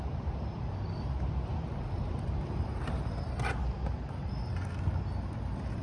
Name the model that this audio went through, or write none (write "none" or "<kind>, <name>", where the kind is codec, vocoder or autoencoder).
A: none